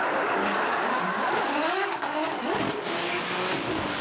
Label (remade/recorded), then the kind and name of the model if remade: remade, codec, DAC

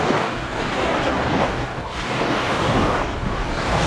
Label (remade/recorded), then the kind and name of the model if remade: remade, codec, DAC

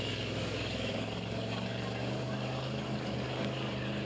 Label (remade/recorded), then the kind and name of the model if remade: remade, codec, DAC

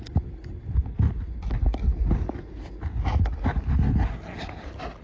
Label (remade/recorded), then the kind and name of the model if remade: recorded